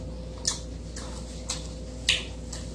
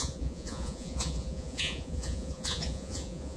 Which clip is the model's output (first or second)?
second